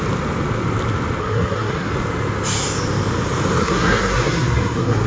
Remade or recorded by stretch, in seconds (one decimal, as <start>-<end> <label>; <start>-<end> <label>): 0.0-1.2 recorded; 1.2-1.9 remade; 1.9-3.6 recorded; 3.6-5.1 remade